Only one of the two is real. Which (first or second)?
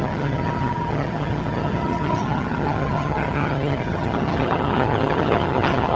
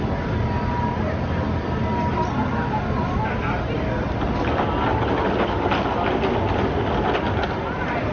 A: second